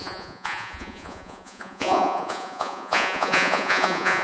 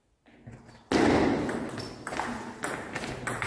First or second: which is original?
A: second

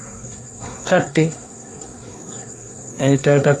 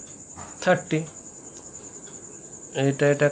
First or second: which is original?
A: second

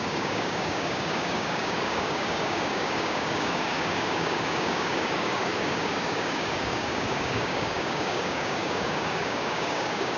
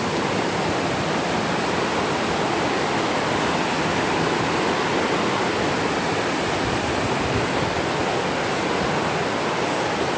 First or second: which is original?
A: second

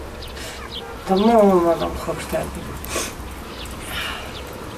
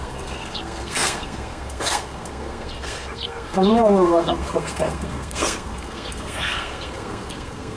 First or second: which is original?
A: first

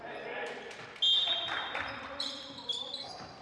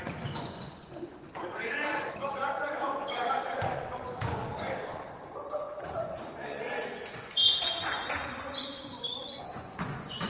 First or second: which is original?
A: first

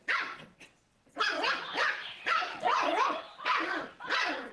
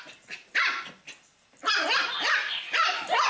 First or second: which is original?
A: second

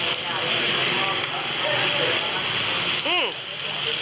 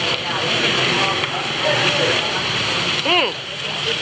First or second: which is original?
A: first